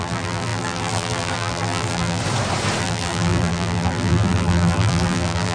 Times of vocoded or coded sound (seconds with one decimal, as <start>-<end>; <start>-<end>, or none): 0.0-2.2; 2.8-5.5